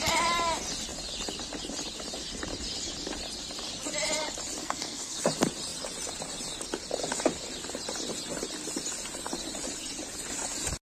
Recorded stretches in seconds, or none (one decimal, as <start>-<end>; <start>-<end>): 0.0-4.6; 5.2-10.8